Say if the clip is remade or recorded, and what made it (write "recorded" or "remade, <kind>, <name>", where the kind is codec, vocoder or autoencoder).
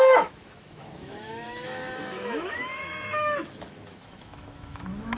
remade, autoencoder, DAC-VAE